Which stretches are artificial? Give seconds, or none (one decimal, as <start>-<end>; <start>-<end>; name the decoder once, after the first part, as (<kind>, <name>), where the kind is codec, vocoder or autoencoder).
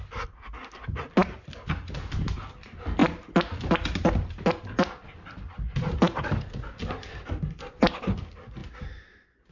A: none